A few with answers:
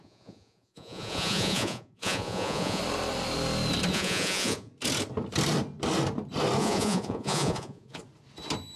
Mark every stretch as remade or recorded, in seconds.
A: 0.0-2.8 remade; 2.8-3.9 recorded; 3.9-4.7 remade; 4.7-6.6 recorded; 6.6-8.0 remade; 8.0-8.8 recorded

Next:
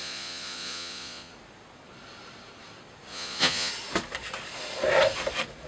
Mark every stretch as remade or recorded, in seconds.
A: 0.0-1.3 remade; 1.3-3.1 recorded; 3.1-3.7 remade; 3.7-5.7 recorded